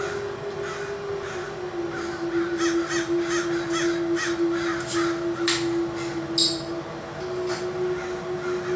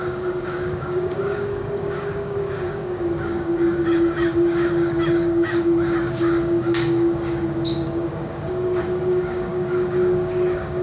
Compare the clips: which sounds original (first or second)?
first